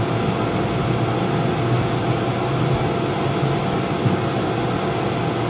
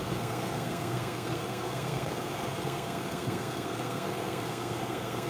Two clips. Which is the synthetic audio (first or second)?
second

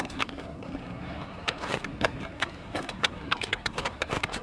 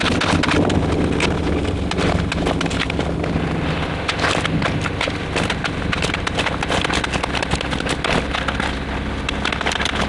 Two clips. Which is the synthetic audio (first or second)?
first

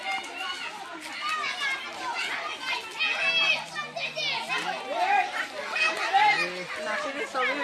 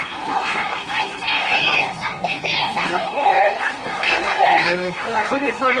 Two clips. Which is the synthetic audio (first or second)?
second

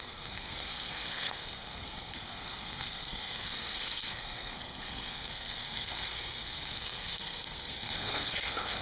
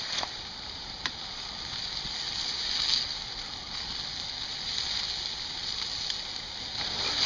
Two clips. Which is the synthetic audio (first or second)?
first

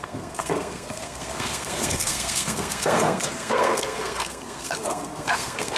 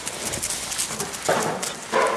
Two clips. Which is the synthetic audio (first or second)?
first